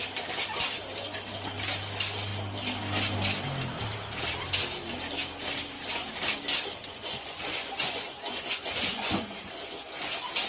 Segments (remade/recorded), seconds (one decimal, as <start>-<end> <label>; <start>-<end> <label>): 0.0-6.8 recorded; 6.8-9.7 remade; 9.7-10.5 recorded